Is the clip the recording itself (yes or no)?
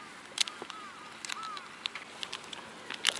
yes